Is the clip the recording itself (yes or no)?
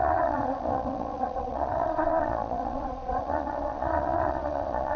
no